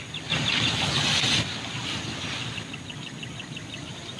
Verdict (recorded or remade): recorded